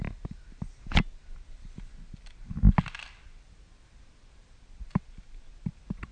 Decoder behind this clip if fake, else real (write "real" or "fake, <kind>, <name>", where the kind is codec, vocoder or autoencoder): real